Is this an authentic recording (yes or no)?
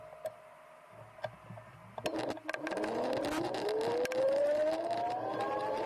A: yes